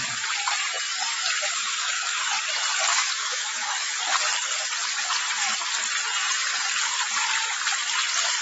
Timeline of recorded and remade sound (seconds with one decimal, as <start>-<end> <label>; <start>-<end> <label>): 0.0-1.1 recorded; 1.1-2.2 remade; 2.2-2.9 recorded; 2.9-3.9 remade; 3.9-8.4 recorded